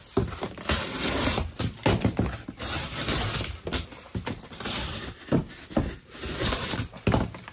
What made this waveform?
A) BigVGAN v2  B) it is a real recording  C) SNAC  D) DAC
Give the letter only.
B